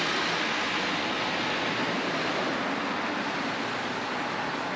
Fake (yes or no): no